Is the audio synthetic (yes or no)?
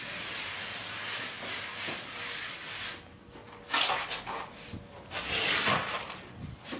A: no